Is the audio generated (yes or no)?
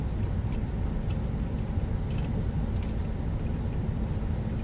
no